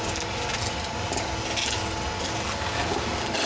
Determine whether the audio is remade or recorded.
recorded